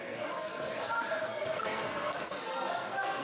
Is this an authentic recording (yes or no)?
no